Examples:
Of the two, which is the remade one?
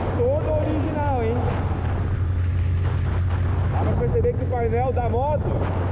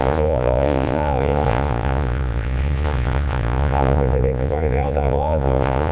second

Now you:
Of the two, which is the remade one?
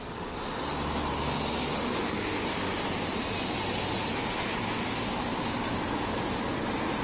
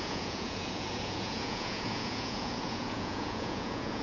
second